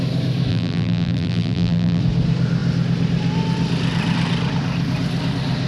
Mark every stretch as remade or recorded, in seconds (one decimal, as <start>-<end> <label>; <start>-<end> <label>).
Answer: 0.0-0.5 recorded; 0.5-2.0 remade; 2.0-5.7 recorded